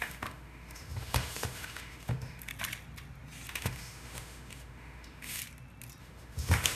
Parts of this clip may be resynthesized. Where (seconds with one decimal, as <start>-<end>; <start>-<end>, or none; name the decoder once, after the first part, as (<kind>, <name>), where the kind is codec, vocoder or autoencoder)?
0.0-2.5 (autoencoder, DAC-VAE); 3.5-5.4; 6.0-6.8